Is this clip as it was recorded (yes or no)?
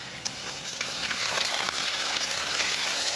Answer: no